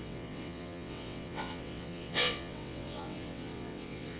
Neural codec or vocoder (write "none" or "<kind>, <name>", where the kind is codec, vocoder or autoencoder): vocoder, WaveNeXt